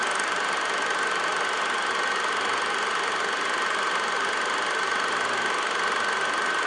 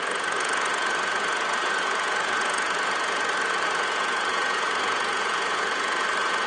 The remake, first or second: second